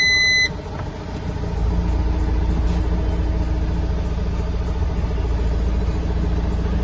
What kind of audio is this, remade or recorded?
recorded